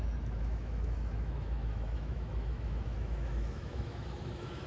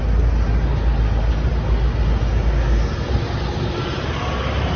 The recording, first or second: second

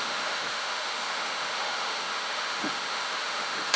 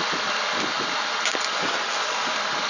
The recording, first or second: second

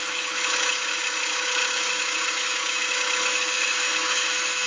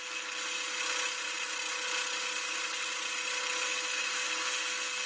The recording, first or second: second